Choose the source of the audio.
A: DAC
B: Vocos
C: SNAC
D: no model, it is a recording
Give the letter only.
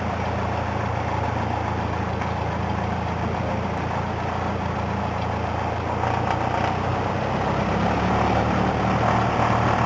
D